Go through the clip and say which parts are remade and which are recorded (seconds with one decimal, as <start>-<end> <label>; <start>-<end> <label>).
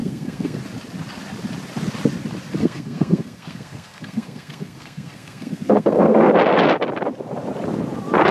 0.0-0.6 remade; 0.6-2.6 recorded; 2.6-6.3 remade; 6.3-8.3 recorded